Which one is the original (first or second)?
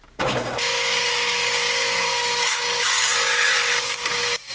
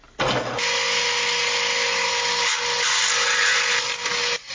second